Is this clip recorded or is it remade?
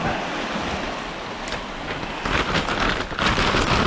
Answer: recorded